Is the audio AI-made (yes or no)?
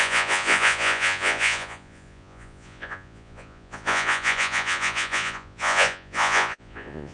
yes